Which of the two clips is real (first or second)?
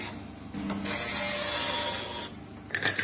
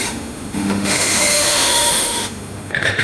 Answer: first